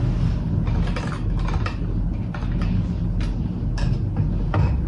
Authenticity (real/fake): real